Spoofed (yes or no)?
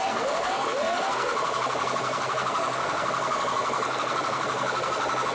yes